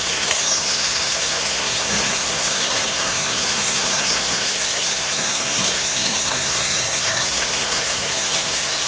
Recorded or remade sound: remade